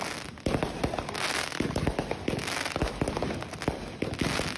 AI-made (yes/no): no